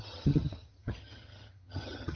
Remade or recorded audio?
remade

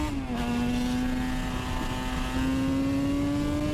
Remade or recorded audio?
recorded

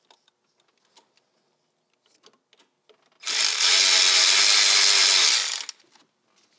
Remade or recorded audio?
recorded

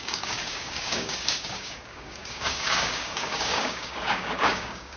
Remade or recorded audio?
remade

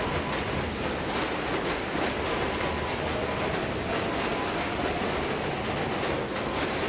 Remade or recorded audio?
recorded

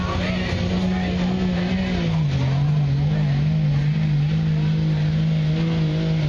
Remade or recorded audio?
recorded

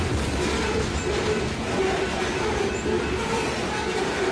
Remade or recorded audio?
recorded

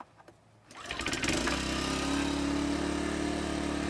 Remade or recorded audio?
recorded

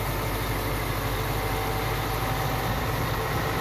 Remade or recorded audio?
recorded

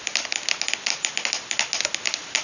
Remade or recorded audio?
recorded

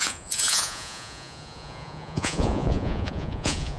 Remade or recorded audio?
remade